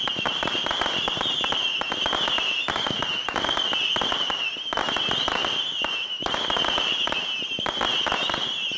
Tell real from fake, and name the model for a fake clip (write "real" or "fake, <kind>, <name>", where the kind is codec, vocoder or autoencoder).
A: real